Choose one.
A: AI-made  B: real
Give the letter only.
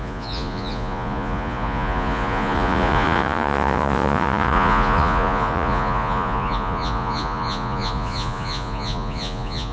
A